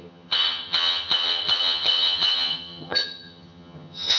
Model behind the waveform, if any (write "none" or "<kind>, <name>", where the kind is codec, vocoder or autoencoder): vocoder, HiFi-GAN